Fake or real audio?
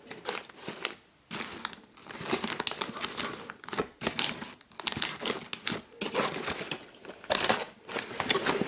real